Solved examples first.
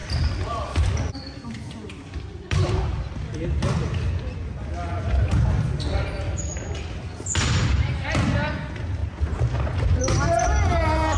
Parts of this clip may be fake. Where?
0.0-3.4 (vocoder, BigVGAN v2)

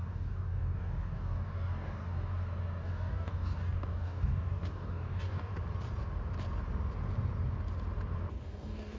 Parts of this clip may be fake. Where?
0.0-2.3 (codec, DAC); 2.8-5.5; 8.4-9.0

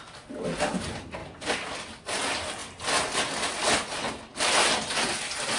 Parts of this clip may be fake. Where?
none

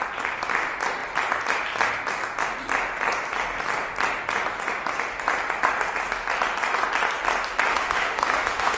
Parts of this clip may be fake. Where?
7.7-8.8 (autoencoder, DAC-VAE)

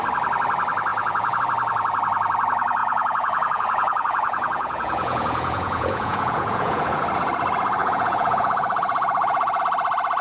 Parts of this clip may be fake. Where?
0.9-1.4 (vocoder, Vocos); 2.8-7.0; 7.8-9.6

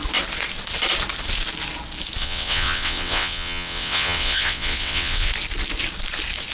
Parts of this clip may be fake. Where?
2.2-5.3 (vocoder, WaveNeXt)

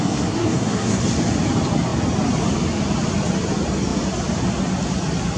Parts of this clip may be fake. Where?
0.0-1.0 (codec, SNAC)

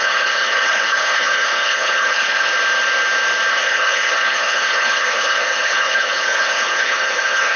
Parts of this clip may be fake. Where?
0.0-2.5 (codec, HILCodec); 3.5-7.6